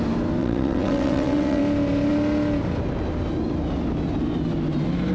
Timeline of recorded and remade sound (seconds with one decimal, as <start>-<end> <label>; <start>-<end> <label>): 0.0-0.4 recorded; 0.4-1.6 remade; 1.6-5.1 recorded